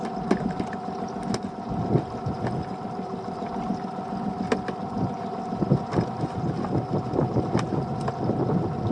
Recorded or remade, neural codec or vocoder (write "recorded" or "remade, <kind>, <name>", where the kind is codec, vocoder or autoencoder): recorded